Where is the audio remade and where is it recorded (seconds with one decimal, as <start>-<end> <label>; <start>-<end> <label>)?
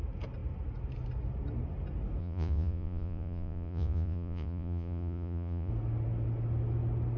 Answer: 0.0-2.2 recorded; 2.2-5.7 remade; 5.7-7.2 recorded